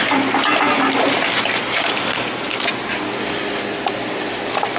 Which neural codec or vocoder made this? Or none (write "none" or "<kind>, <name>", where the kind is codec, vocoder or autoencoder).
none